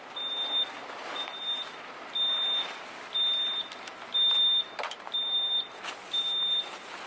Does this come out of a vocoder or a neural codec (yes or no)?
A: no